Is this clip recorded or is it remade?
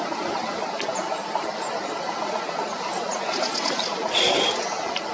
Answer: recorded